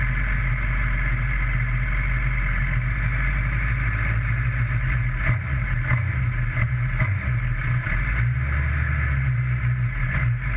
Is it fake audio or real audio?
real